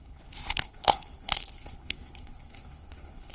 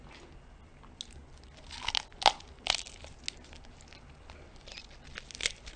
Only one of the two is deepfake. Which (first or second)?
first